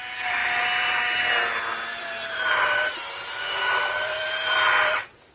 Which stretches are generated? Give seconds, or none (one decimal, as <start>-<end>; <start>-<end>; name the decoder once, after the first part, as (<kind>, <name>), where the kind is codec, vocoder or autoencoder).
0.4-1.0 (vocoder, BigVGAN v2); 1.9-5.3